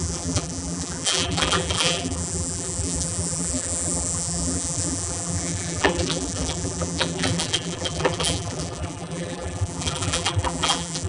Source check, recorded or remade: remade